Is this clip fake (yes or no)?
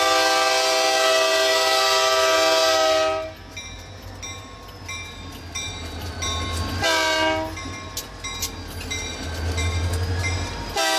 no